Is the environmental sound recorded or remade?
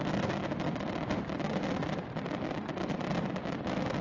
recorded